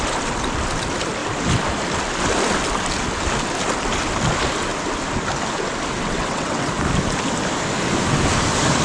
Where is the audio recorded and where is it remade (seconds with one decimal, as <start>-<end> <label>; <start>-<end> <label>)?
0.0-6.0 recorded; 6.0-6.7 remade; 6.7-8.8 recorded